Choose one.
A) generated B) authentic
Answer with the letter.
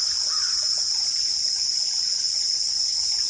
B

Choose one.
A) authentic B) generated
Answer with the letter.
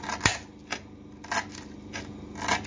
A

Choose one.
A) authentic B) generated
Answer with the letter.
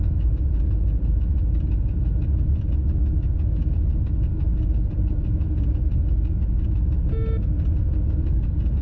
A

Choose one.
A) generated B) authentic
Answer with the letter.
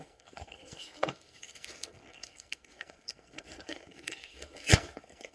A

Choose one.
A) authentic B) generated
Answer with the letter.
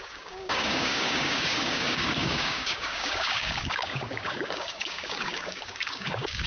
B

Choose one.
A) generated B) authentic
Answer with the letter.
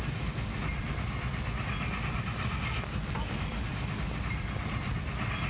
B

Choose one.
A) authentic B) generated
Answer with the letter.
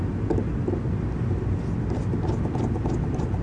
A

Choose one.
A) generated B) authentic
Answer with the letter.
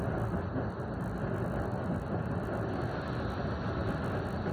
B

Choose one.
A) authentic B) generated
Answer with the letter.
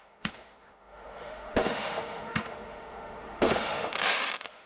B